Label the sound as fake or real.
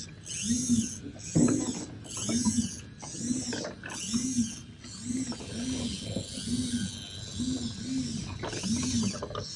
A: real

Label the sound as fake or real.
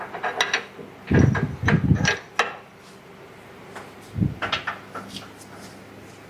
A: real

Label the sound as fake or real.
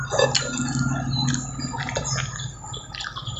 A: real